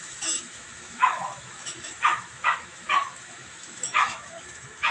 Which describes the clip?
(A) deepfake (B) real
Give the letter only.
A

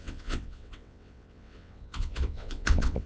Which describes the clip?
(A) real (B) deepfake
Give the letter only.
B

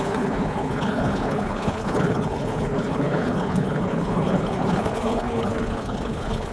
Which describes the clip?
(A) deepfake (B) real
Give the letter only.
A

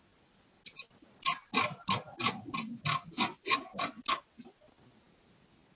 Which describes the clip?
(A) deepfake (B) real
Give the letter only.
B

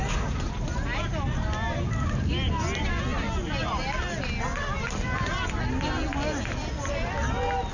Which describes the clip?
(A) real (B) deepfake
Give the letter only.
A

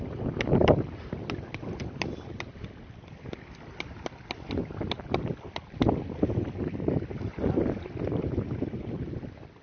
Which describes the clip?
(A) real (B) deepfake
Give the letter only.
A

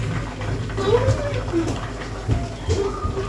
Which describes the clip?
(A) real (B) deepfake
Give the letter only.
A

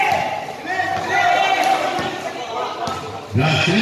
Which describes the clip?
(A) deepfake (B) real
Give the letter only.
B